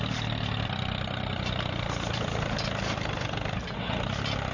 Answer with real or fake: real